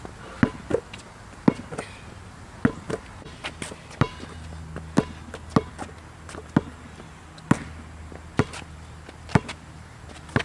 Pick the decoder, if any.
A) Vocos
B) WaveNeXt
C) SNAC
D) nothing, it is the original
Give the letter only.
D